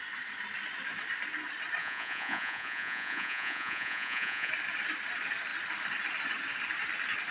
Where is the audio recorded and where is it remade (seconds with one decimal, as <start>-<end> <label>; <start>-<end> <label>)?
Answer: 0.0-1.8 recorded; 1.8-4.5 remade; 4.5-7.3 recorded